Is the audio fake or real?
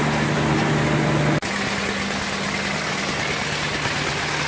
real